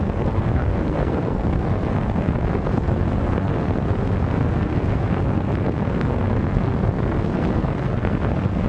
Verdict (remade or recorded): remade